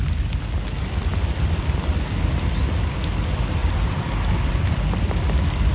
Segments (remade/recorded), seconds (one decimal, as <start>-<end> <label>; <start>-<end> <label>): 0.0-5.7 recorded